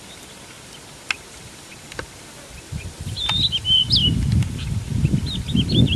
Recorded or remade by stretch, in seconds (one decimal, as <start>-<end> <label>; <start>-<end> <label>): 0.0-6.0 recorded